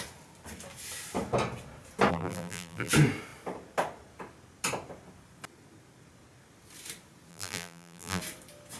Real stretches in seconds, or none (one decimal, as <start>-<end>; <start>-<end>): 0.0-2.1; 2.9-7.3; 8.2-8.8